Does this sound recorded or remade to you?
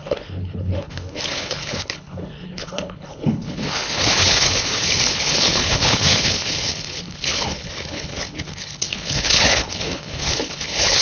remade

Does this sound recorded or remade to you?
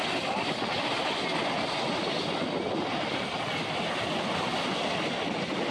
recorded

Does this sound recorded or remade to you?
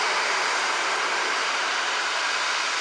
recorded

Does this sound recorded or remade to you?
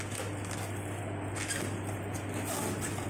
recorded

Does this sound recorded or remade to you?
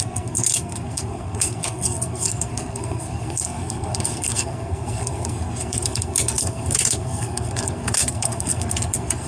remade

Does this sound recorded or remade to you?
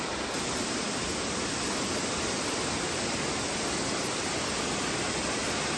recorded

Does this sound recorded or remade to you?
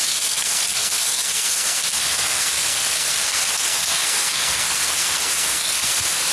remade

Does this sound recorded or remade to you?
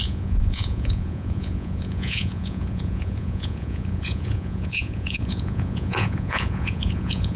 remade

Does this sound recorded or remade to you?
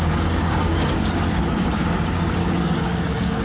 remade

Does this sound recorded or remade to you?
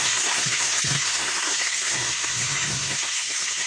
remade